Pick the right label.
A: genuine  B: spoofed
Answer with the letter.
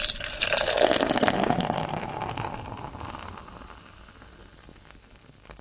A